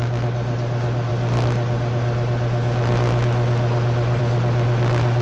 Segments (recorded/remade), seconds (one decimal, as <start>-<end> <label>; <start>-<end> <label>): 0.0-5.2 recorded